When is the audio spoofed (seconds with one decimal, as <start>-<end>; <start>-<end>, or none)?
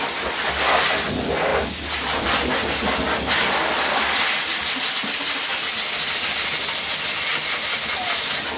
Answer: none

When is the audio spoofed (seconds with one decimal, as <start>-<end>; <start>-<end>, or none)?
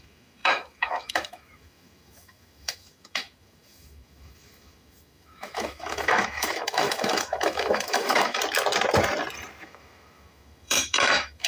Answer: 0.0-8.4; 9.6-11.5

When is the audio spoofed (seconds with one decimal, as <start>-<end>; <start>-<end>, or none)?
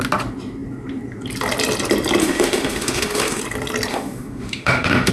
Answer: 2.2-3.4; 3.9-5.1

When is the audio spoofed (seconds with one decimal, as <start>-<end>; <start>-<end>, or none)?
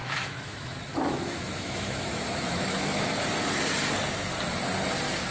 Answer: 0.0-3.2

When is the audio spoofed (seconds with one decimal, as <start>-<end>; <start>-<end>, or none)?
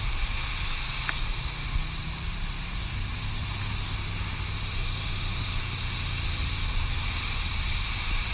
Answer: 5.0-5.6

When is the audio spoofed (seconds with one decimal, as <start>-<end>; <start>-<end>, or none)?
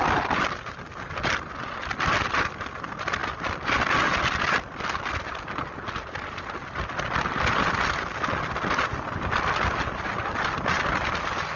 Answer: none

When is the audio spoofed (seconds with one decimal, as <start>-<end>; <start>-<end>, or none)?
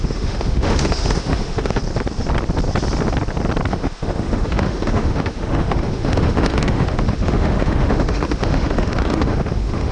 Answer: 0.0-1.8; 3.7-9.9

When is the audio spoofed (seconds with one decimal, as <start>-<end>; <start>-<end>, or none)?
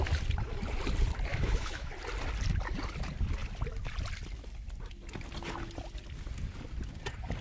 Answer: 1.3-1.9